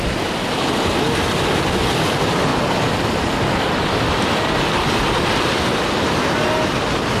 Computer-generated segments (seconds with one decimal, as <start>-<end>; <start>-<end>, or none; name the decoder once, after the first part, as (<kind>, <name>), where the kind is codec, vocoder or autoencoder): none